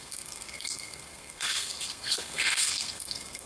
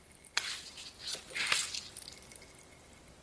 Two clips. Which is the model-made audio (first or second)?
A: first